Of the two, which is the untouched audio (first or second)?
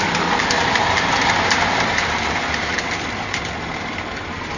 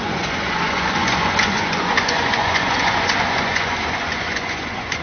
first